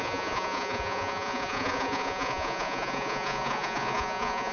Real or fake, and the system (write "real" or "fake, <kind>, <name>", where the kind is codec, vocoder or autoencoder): fake, vocoder, Vocos